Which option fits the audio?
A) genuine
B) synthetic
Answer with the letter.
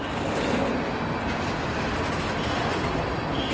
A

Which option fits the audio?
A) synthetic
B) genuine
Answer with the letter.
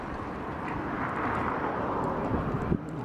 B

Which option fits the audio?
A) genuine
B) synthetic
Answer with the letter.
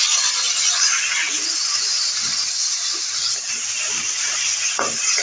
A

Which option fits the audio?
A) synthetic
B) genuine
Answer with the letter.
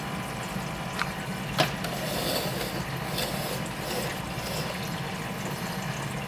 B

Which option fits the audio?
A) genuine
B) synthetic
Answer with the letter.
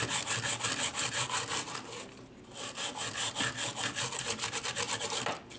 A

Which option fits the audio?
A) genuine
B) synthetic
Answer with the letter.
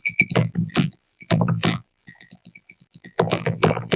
B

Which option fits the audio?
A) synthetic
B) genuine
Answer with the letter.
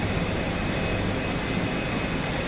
B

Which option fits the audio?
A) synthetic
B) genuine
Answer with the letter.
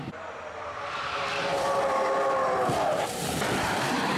A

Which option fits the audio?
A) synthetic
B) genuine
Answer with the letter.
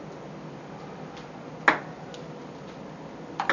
B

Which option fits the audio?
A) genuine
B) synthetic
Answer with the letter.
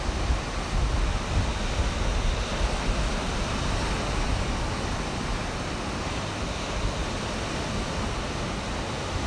A